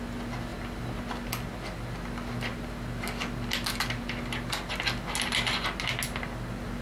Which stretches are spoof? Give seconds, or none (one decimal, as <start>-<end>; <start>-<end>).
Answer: 0.5-1.0